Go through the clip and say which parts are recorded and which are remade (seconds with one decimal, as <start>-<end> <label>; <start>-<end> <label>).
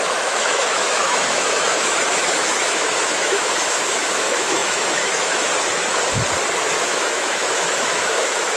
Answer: 0.0-5.5 remade; 5.5-6.8 recorded; 6.8-8.6 remade